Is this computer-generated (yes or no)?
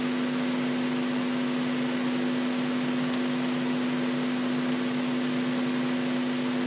no